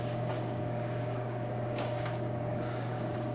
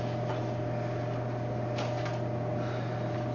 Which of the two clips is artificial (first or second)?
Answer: first